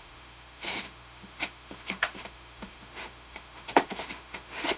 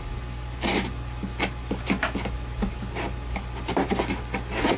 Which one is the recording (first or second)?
second